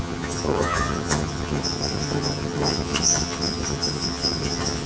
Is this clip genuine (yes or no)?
no